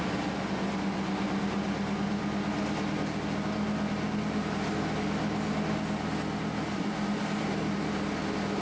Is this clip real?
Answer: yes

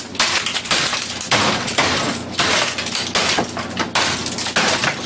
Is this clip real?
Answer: yes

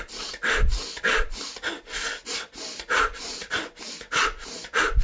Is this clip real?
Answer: yes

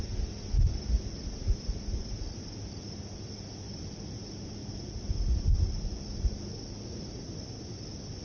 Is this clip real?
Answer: yes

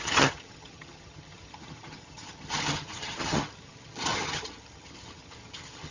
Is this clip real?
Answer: no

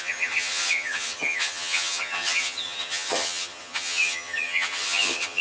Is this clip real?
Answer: no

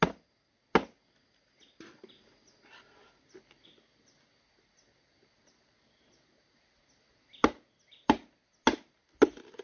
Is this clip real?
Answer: yes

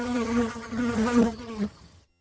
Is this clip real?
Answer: no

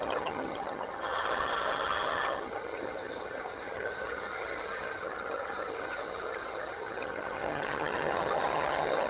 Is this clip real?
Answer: no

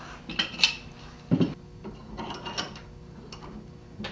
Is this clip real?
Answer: yes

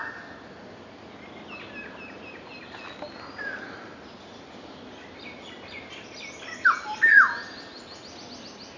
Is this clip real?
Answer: yes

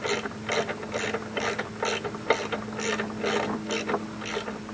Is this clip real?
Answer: yes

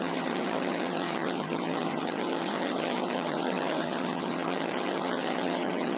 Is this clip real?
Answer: no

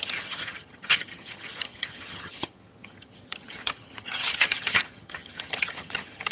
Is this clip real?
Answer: no